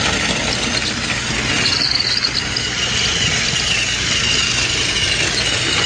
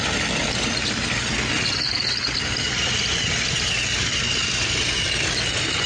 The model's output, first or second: second